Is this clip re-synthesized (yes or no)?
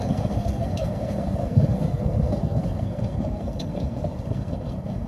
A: yes